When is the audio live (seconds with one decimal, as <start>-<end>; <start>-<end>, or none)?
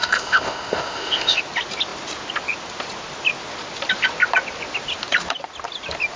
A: 1.4-6.2